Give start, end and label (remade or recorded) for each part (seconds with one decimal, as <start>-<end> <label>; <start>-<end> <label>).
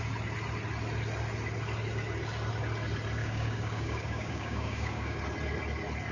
0.0-3.2 recorded; 3.2-5.2 remade; 5.2-6.1 recorded